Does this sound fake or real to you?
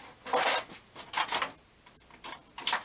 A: real